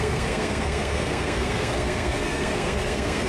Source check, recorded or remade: remade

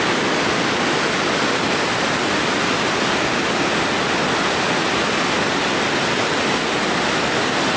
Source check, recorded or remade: recorded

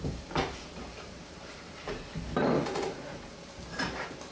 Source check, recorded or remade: remade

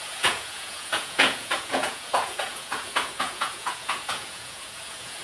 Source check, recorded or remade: remade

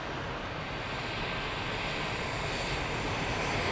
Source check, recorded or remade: recorded